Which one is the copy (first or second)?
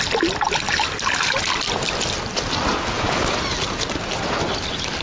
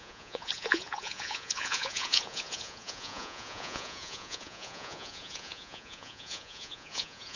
second